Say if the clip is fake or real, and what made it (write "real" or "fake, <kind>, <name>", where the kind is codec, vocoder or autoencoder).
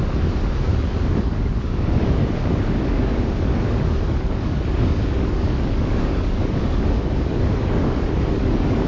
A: fake, codec, DAC